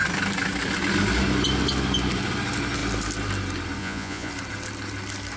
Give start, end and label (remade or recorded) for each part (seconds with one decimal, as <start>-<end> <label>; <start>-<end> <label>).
0.0-3.8 recorded; 3.8-4.3 remade; 4.3-5.4 recorded